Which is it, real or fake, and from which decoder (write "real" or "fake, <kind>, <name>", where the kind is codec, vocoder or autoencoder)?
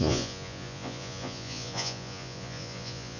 fake, vocoder, Vocos